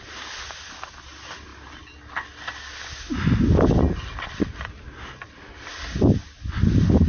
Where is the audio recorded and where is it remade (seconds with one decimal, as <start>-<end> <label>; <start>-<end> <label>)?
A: 0.0-7.1 recorded